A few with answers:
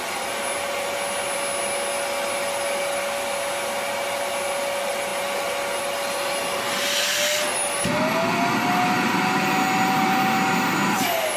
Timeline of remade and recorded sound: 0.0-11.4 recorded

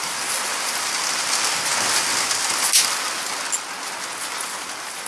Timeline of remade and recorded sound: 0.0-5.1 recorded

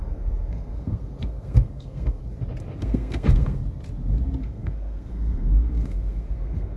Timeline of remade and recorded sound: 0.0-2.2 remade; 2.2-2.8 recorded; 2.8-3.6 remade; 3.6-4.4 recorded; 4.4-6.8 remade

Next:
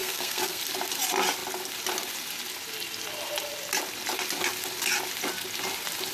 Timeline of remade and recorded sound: 0.0-0.6 remade; 0.6-6.1 recorded

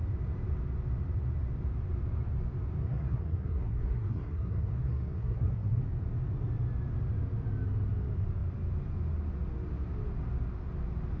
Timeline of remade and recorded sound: 0.0-2.8 recorded; 2.8-5.8 remade; 5.8-11.2 recorded

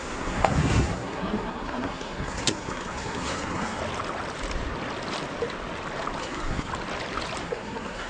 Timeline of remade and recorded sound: 0.0-3.8 remade; 3.8-6.2 recorded; 6.2-6.7 remade; 6.7-7.4 recorded; 7.4-8.1 remade

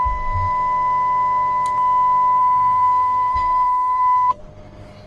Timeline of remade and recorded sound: 0.0-2.4 recorded; 2.4-4.4 remade; 4.4-5.1 recorded

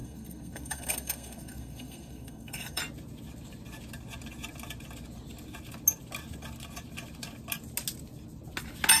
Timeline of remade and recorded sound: 0.0-2.8 remade; 2.8-9.0 recorded